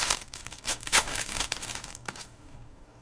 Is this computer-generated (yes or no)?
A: yes